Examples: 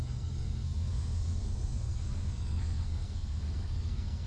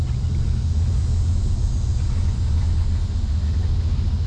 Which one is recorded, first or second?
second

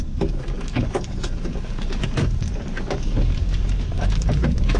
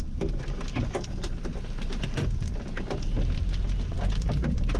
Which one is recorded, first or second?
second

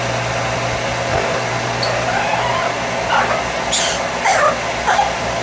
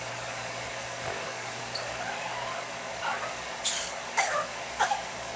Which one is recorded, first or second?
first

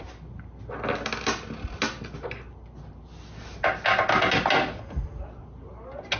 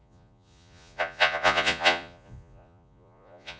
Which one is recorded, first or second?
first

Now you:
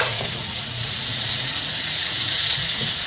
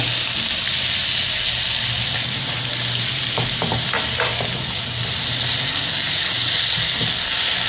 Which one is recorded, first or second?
second